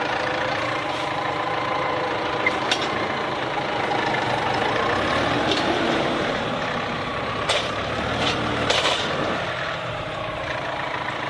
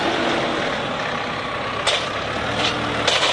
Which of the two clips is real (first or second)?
second